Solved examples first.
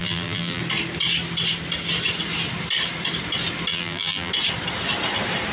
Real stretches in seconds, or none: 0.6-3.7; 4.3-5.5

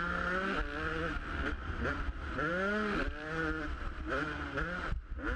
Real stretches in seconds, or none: 0.0-5.4

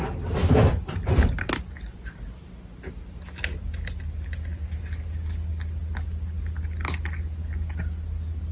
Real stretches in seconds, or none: 0.0-0.4; 2.5-8.5

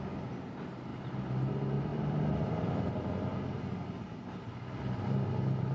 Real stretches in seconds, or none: 0.0-1.9; 2.5-5.7